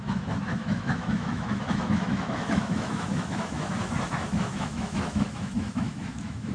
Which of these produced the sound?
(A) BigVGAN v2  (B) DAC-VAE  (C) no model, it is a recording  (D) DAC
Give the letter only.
B